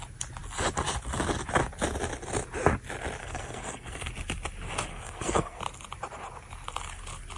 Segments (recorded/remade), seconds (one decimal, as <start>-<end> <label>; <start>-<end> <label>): 0.0-3.2 recorded; 3.2-4.1 remade; 4.1-4.9 recorded; 4.9-5.6 remade; 5.6-7.4 recorded